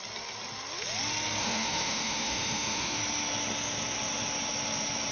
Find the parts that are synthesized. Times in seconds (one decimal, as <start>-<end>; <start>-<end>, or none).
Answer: 1.4-3.0

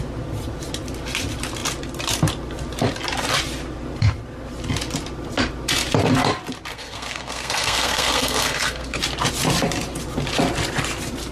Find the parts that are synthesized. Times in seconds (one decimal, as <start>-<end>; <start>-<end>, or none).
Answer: 6.7-9.0

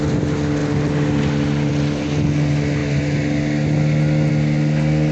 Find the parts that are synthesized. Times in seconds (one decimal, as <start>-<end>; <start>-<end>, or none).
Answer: none

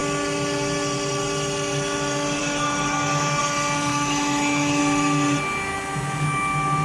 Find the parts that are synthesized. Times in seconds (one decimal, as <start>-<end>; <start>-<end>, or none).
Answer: 2.4-3.4; 3.9-4.8